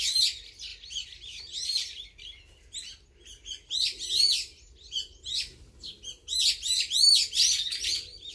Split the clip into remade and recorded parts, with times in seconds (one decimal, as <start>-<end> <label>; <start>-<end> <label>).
0.0-8.3 recorded

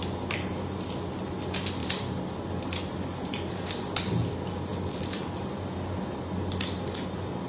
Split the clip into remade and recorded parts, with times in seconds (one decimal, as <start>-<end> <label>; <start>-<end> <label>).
0.0-1.8 recorded; 1.8-2.6 remade; 2.6-7.5 recorded

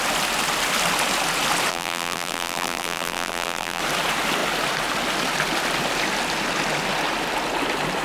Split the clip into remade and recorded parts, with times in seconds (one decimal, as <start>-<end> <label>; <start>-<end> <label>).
0.0-1.7 recorded; 1.7-3.8 remade; 3.8-8.0 recorded

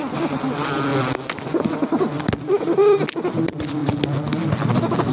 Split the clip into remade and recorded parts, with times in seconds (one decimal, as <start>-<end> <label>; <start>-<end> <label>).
0.0-0.9 remade; 0.9-2.6 recorded; 2.6-3.8 remade; 3.8-4.5 recorded; 4.5-5.1 remade

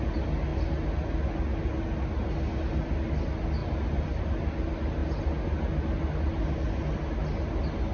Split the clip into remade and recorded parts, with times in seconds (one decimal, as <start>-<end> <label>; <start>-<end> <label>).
0.0-3.6 recorded; 3.6-4.2 remade; 4.2-7.9 recorded